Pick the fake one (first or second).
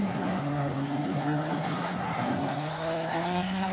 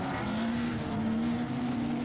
first